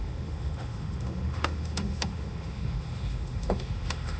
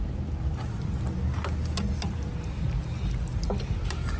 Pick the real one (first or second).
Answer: second